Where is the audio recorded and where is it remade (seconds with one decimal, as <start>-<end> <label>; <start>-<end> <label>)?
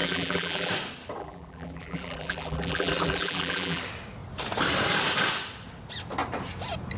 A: 0.0-0.7 remade; 0.7-1.2 recorded; 1.2-3.8 remade; 3.8-7.0 recorded